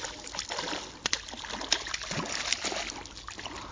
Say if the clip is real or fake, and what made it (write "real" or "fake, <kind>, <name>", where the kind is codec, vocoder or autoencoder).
real